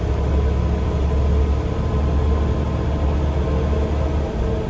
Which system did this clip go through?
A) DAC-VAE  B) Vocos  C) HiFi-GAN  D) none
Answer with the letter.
D